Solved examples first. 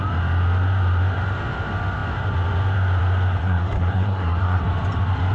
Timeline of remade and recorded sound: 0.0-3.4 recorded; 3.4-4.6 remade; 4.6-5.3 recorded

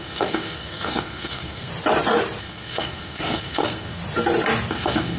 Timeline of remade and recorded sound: 0.0-1.7 remade; 1.7-2.4 recorded; 2.4-4.0 remade; 4.0-4.7 recorded; 4.7-5.2 remade

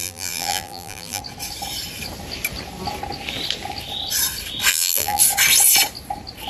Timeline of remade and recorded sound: 0.0-1.2 remade; 1.2-4.7 recorded; 4.7-5.2 remade; 5.2-6.5 recorded

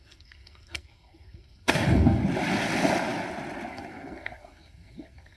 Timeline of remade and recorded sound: 0.0-2.2 remade; 2.2-3.7 recorded; 3.7-5.4 remade

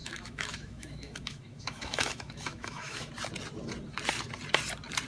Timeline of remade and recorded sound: 0.0-3.1 remade; 3.1-5.1 recorded